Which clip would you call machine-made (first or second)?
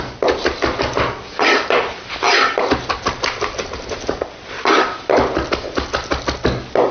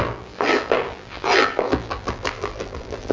second